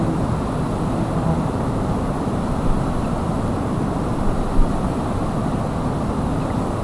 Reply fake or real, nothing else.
real